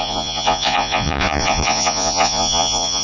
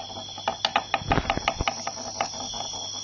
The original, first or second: second